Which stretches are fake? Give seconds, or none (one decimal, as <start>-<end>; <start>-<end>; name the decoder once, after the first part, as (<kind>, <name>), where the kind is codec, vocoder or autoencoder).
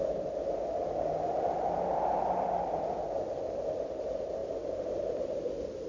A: none